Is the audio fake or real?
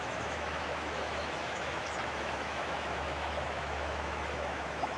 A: fake